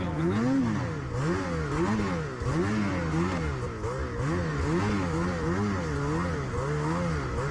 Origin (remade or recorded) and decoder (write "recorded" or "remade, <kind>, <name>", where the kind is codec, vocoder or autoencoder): recorded